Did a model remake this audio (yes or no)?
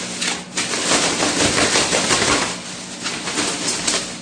no